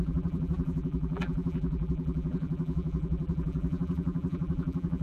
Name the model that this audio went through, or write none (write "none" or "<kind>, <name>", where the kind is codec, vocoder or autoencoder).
vocoder, BigVGAN v2